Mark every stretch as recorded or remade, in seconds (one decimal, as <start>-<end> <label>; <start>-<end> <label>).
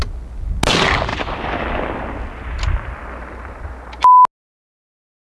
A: 0.0-1.1 recorded; 1.1-2.0 remade; 2.0-5.4 recorded